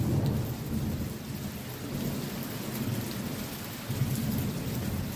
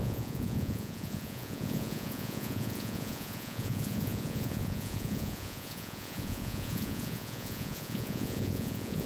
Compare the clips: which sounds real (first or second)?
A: first